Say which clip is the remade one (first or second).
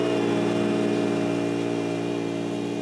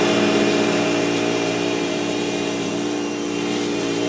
second